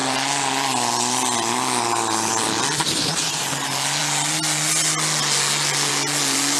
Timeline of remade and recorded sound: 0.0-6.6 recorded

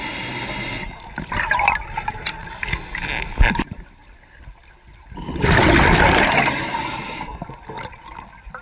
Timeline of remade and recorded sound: 0.0-8.6 recorded

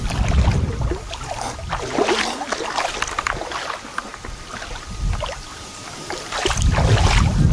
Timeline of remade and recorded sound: 0.0-5.5 recorded; 5.5-6.1 remade; 6.1-7.5 recorded

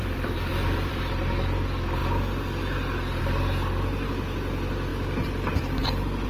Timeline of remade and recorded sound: 0.0-1.1 remade; 1.1-6.3 recorded